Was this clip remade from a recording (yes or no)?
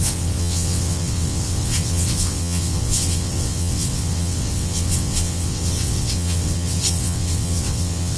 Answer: yes